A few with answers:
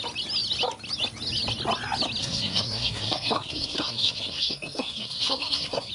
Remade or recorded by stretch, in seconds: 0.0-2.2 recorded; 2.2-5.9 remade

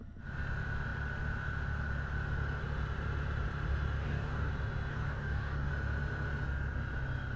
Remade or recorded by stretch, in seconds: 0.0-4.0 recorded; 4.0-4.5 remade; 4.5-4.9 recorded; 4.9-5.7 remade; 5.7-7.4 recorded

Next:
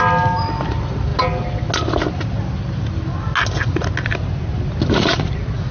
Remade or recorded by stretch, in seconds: 0.0-5.7 recorded

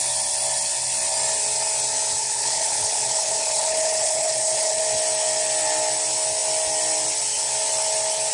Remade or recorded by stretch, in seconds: 0.0-2.2 recorded; 2.2-4.8 remade; 4.8-8.3 recorded

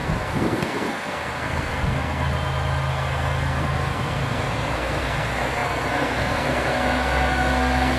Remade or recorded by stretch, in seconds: 0.0-2.3 remade; 2.3-2.9 recorded; 2.9-8.0 remade

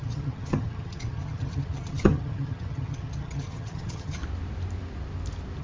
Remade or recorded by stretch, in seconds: 0.0-4.2 remade; 4.2-5.6 recorded

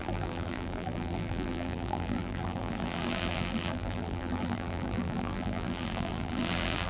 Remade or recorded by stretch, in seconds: 0.0-6.9 remade

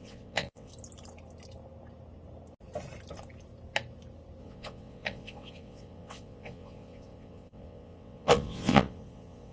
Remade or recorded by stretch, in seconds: 0.0-0.7 remade; 0.7-4.4 recorded; 4.4-9.5 remade